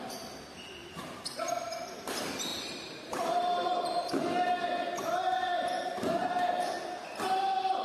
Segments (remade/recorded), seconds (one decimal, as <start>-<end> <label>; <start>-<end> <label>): 0.0-2.5 recorded; 2.5-4.1 remade; 4.1-5.5 recorded; 5.5-6.5 remade; 6.5-7.8 recorded